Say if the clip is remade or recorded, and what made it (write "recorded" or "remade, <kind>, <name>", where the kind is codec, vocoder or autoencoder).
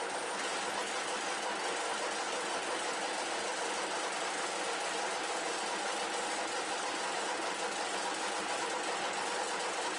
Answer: recorded